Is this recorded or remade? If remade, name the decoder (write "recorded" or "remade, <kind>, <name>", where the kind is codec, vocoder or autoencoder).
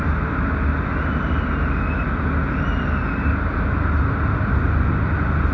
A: recorded